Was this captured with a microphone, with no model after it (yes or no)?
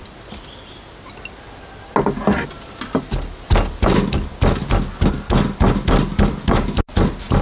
yes